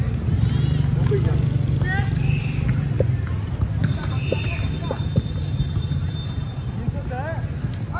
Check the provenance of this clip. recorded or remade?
recorded